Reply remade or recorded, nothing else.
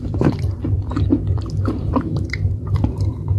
remade